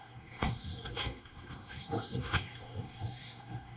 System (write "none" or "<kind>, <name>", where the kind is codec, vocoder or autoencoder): codec, SNAC